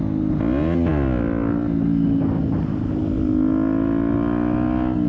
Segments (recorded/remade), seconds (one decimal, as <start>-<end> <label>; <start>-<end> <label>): 0.0-5.1 recorded